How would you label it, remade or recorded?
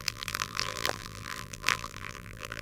remade